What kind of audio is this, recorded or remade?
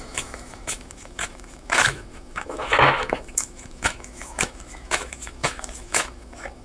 remade